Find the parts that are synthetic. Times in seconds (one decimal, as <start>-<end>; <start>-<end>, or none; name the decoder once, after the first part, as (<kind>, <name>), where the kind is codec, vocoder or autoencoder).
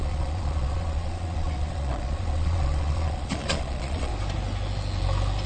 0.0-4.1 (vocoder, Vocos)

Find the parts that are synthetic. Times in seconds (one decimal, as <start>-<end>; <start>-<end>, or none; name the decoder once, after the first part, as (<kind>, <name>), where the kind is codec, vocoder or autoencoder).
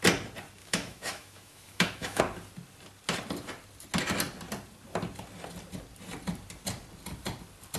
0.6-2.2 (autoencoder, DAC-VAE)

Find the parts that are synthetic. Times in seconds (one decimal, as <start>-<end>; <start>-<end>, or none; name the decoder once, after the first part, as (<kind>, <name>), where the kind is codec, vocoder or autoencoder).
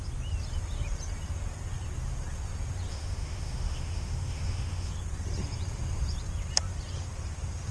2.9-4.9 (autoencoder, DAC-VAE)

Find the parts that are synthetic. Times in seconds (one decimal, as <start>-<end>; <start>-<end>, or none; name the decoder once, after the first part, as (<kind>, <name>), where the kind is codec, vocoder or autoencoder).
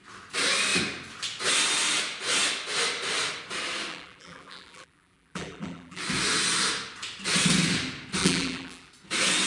3.9-6.0 (vocoder, BigVGAN v2); 8.2-8.9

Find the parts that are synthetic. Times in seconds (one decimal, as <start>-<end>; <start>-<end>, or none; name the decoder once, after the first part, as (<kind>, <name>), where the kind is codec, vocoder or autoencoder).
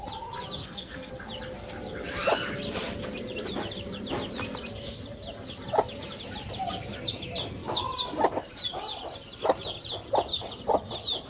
0.6-1.1 (codec, SNAC)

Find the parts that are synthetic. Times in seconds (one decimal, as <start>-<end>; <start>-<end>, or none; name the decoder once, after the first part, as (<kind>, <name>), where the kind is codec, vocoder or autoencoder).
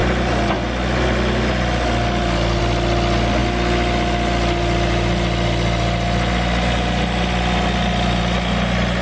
none